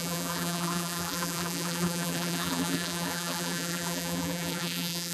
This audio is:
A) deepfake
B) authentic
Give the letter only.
A